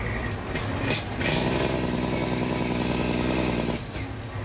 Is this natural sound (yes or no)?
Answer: yes